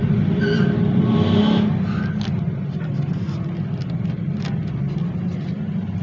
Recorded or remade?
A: recorded